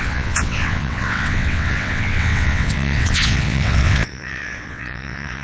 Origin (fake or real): fake